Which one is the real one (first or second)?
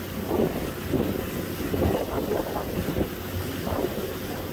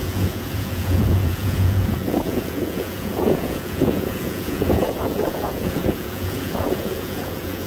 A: first